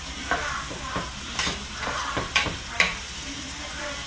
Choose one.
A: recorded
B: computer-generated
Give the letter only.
B